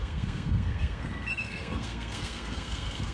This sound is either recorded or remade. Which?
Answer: remade